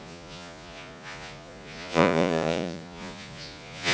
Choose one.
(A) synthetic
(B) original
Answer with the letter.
A